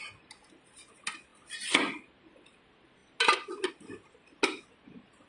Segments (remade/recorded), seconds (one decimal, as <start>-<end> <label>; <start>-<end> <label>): 0.0-5.3 recorded